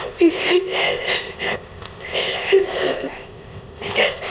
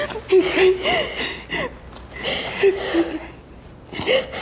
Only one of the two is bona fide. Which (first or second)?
second